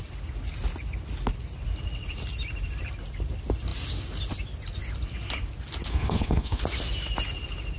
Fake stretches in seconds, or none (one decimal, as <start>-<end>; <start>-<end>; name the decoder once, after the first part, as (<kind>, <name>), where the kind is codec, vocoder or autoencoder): 5.9-6.6 (autoencoder, DAC-VAE)